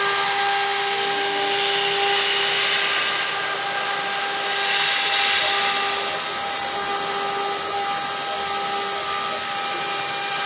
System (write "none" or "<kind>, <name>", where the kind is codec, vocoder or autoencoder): none